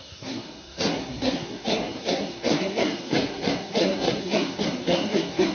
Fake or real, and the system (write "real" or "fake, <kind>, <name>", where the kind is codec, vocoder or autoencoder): fake, codec, SNAC